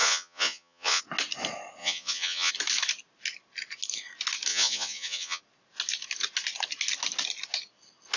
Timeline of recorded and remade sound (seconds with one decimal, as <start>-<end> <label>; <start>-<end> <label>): 0.0-1.0 remade; 1.0-1.8 recorded; 1.8-2.5 remade; 2.5-4.5 recorded; 4.5-5.4 remade; 5.4-8.2 recorded